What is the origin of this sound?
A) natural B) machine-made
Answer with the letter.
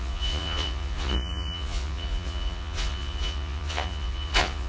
B